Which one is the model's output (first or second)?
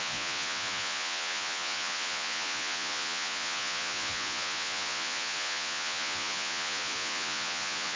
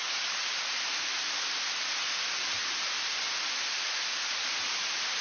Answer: first